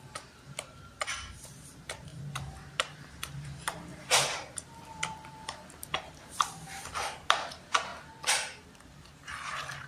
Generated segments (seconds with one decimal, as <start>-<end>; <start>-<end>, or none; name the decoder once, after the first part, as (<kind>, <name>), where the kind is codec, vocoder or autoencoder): 0.0-7.9 (vocoder, BigVGAN v2); 8.7-9.9